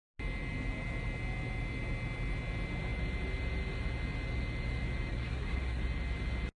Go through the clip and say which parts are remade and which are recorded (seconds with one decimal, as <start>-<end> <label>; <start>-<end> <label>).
0.0-5.1 recorded; 5.1-5.8 remade; 5.8-6.6 recorded